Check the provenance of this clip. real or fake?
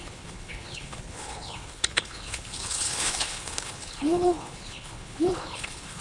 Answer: fake